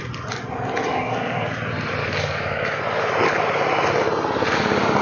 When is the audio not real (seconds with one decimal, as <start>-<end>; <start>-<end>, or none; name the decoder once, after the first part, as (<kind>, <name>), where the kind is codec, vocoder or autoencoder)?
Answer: 0.9-1.5 (codec, DAC); 2.0-2.8